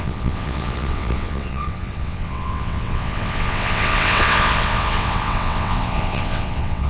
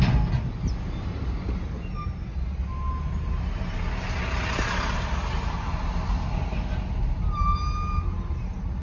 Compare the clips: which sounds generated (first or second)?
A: first